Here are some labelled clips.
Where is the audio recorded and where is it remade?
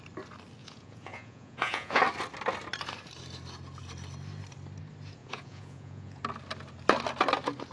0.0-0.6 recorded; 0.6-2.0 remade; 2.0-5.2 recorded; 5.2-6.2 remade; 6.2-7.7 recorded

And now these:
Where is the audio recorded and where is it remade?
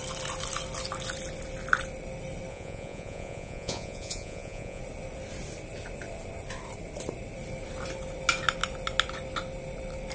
0.0-2.5 recorded; 2.5-4.8 remade; 4.8-10.1 recorded